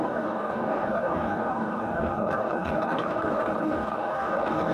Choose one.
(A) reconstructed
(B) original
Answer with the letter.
A